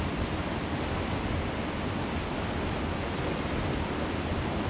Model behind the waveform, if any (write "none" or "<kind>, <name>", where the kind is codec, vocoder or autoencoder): none